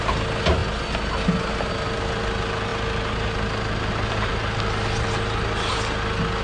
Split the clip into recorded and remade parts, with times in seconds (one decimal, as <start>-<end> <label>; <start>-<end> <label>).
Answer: 0.0-6.4 recorded